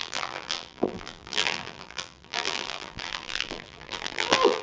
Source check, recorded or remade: remade